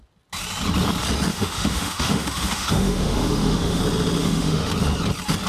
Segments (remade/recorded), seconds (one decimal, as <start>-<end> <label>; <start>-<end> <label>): 0.0-1.3 recorded; 1.3-3.8 remade; 3.8-4.2 recorded; 4.2-4.7 remade; 4.7-5.5 recorded